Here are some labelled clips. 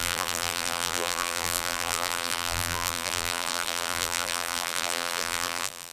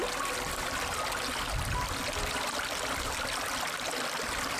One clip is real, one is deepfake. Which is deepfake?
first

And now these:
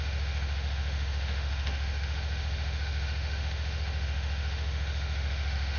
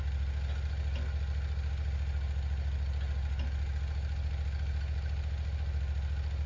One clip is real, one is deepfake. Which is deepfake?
first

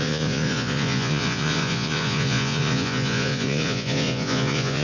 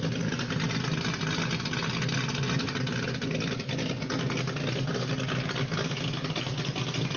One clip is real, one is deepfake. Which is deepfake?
first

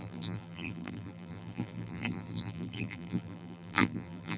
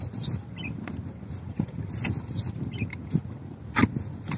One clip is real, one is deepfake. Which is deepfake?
first